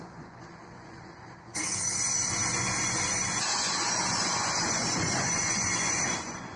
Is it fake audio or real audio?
fake